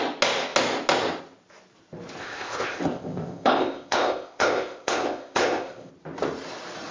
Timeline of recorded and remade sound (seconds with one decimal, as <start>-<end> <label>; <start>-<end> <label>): 0.0-2.2 recorded; 2.2-5.9 remade; 5.9-6.9 recorded